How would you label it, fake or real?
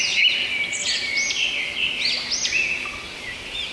real